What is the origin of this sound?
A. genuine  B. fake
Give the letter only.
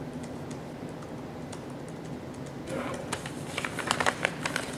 A